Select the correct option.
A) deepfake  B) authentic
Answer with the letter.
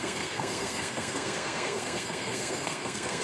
A